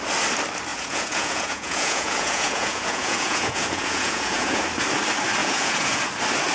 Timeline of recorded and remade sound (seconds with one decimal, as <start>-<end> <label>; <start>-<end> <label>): 0.0-0.7 recorded; 0.7-4.6 remade; 4.6-5.4 recorded; 5.4-6.0 remade; 6.0-6.5 recorded